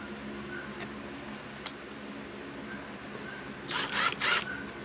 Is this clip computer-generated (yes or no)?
no